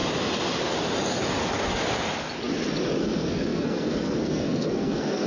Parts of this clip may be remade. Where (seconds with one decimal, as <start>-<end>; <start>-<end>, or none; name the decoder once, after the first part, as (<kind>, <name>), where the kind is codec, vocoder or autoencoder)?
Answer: 3.0-5.3 (codec, SNAC)